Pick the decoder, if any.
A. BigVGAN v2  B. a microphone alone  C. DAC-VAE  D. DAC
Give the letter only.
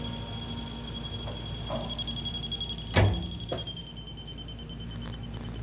B